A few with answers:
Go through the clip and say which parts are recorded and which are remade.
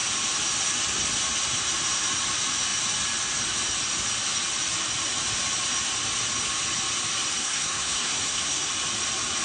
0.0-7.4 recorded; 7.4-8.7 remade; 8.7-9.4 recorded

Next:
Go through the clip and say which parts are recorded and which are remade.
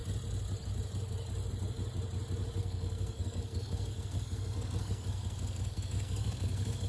0.0-2.6 recorded; 2.6-6.9 remade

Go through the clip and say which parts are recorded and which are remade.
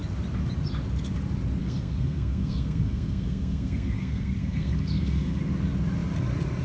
0.0-1.6 recorded; 1.6-5.4 remade; 5.4-6.6 recorded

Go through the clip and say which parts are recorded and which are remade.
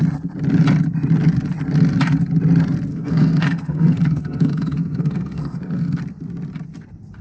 0.0-2.9 recorded; 2.9-6.0 remade; 6.0-7.2 recorded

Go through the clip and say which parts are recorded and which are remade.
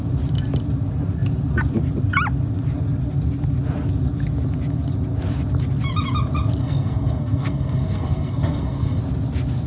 0.0-6.6 recorded; 6.6-9.0 remade; 9.0-9.7 recorded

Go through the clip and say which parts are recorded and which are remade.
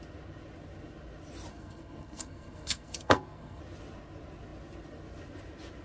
0.0-1.5 recorded; 1.5-3.6 remade; 3.6-5.8 recorded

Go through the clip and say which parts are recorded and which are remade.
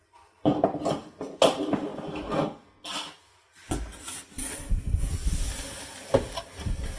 0.0-7.0 recorded